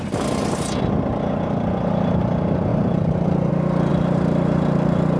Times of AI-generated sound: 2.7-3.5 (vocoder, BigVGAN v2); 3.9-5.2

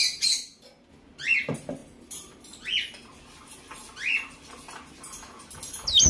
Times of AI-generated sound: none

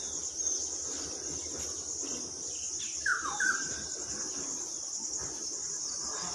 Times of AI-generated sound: none